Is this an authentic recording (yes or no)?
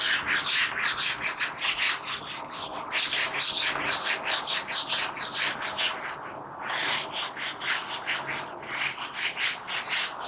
yes